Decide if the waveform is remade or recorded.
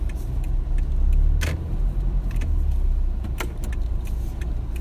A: recorded